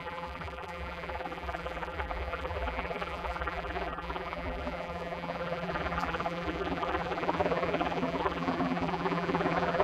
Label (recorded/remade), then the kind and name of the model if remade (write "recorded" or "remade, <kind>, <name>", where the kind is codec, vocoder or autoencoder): remade, vocoder, BigVGAN v2